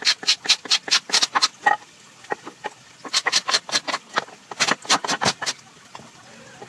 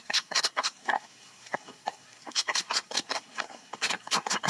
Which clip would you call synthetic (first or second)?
second